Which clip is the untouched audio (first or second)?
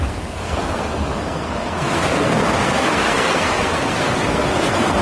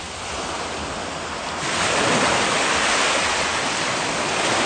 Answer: second